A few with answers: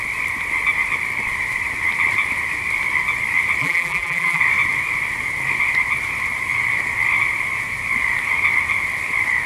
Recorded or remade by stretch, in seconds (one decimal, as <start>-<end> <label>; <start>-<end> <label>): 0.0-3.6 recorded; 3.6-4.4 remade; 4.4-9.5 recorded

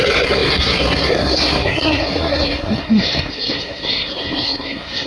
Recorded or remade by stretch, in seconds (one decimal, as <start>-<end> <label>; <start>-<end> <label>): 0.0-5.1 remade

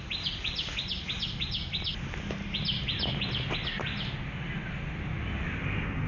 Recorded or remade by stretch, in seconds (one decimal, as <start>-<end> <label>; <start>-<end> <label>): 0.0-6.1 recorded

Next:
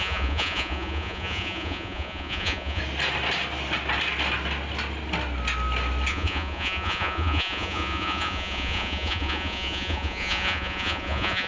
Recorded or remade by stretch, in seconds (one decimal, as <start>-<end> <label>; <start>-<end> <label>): 0.0-2.8 remade; 2.8-6.1 recorded; 6.1-11.5 remade